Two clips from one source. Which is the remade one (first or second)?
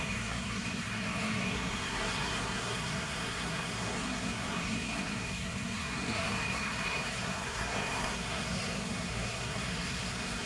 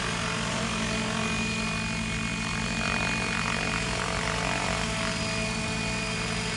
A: first